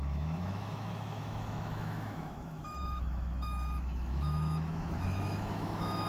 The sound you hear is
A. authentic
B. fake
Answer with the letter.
B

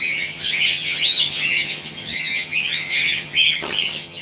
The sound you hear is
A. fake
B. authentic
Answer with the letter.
A